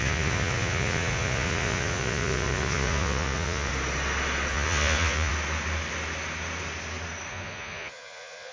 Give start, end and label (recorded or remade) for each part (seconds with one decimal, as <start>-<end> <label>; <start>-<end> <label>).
0.0-3.7 remade; 3.7-4.5 recorded; 4.5-5.3 remade; 5.3-7.3 recorded; 7.3-8.5 remade